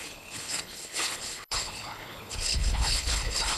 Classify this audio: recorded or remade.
remade